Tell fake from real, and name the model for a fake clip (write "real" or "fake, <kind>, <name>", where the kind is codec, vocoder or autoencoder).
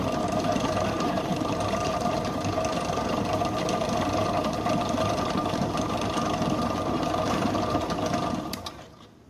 fake, vocoder, BigVGAN v2